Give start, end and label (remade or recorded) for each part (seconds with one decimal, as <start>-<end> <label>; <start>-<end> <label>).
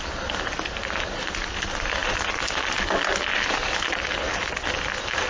0.0-5.3 recorded